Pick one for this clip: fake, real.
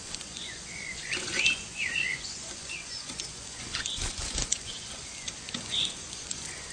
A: fake